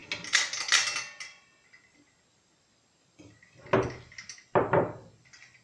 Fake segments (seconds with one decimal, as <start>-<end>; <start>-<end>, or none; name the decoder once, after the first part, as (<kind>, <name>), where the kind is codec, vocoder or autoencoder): none